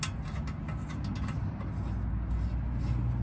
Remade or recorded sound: recorded